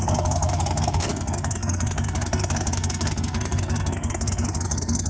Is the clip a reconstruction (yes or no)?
yes